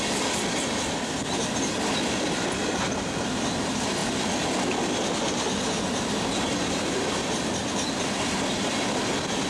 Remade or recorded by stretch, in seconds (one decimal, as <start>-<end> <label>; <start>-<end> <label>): 0.0-9.5 recorded